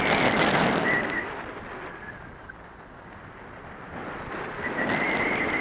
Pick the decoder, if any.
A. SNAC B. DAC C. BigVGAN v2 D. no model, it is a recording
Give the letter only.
D